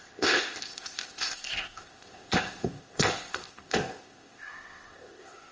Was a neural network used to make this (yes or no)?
yes